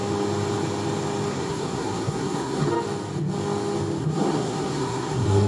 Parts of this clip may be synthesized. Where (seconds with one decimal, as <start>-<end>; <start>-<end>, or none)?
1.3-2.7; 4.0-5.5